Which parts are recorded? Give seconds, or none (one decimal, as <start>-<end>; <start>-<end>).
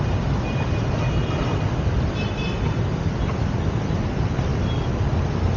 0.0-5.6